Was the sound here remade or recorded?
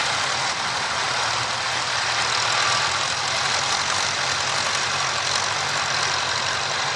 remade